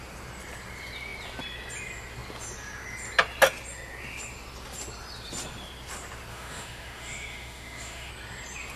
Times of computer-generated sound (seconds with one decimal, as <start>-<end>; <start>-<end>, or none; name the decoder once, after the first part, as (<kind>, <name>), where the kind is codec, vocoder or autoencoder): 6.3-8.1 (autoencoder, DAC-VAE)